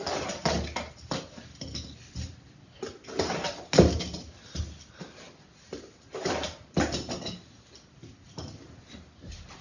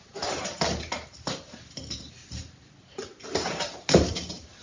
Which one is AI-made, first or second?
second